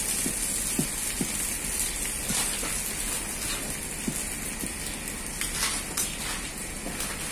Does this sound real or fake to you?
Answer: real